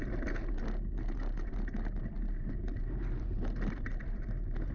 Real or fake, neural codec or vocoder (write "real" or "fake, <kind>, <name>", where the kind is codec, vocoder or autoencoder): real